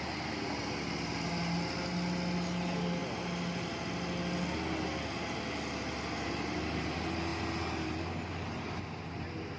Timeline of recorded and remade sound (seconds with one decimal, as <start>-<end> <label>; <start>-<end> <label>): 0.0-9.6 recorded